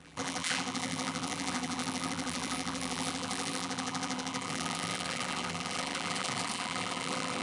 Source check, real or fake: fake